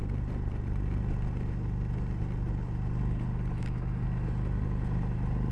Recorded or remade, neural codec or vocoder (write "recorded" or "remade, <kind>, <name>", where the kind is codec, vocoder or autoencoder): recorded